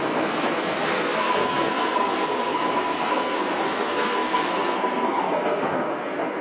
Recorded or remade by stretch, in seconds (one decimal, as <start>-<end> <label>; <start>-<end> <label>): 0.0-6.4 remade